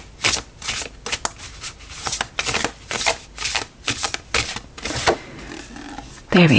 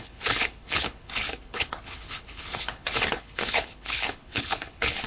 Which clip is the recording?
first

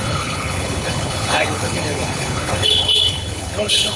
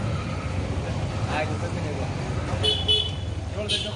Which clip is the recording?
second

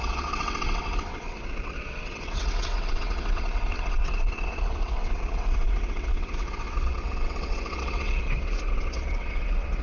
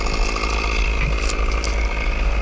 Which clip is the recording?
second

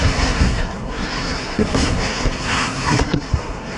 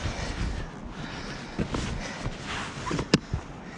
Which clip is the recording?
second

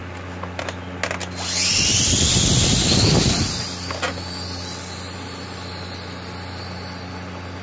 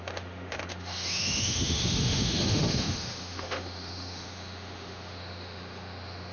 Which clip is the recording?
first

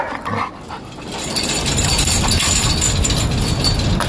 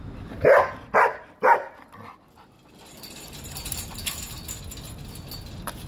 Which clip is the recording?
second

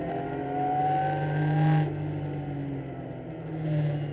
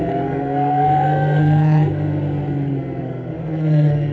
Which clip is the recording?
first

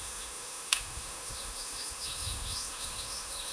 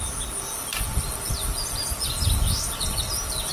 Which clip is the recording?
second